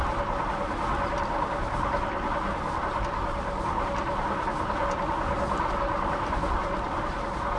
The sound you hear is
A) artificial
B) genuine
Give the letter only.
B